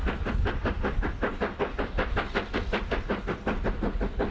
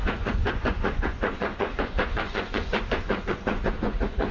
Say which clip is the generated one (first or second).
second